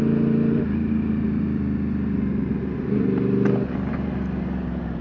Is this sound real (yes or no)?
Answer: yes